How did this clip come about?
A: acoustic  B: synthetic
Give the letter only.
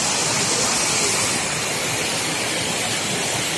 A